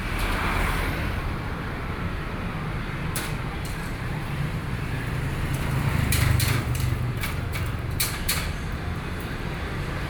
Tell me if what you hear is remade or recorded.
remade